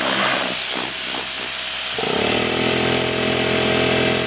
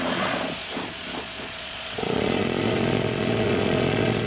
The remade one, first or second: second